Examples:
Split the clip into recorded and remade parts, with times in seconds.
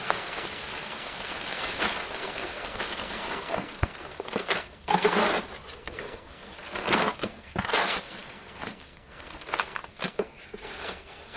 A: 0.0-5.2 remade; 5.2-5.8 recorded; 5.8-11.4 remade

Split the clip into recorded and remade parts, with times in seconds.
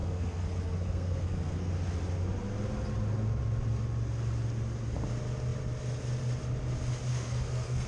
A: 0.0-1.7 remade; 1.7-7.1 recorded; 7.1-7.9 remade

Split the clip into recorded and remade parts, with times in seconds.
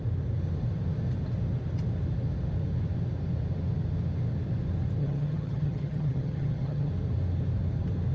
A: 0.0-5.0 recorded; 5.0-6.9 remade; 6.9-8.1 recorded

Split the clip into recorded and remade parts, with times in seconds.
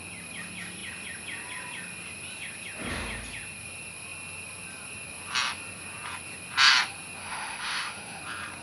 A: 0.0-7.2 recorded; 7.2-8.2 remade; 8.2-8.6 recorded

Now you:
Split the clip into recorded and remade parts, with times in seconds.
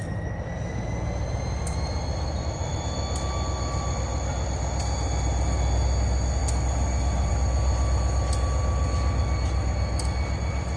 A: 0.0-10.8 recorded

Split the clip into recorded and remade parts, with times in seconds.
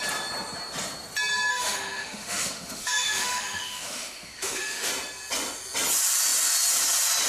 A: 0.0-1.5 recorded; 1.5-4.9 remade; 4.9-7.3 recorded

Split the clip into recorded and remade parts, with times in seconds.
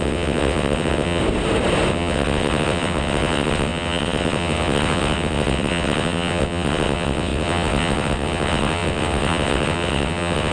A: 0.0-1.2 remade; 1.2-1.9 recorded; 1.9-10.5 remade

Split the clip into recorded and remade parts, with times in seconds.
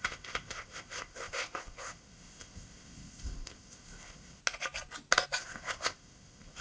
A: 0.0-4.4 remade; 4.4-5.4 recorded; 5.4-6.6 remade